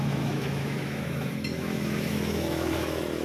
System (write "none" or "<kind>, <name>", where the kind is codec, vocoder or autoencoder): autoencoder, DAC-VAE